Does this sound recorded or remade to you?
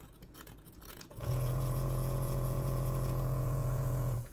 remade